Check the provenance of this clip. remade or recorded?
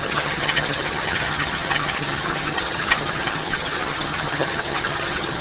remade